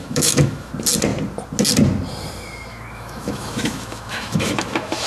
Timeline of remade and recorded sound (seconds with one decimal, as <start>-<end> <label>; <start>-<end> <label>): 0.0-0.7 remade; 0.7-2.7 recorded; 2.7-5.1 remade